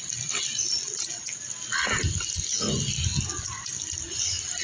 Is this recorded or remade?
recorded